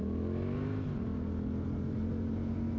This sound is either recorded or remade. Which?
recorded